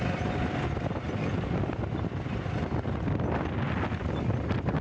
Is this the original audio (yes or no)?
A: yes